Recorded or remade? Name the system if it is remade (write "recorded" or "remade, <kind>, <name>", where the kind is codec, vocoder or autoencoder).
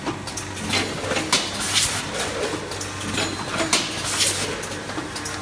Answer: recorded